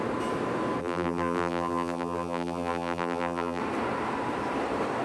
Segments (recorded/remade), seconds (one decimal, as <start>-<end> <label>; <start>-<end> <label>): 0.0-0.8 recorded; 0.8-3.6 remade; 3.6-5.0 recorded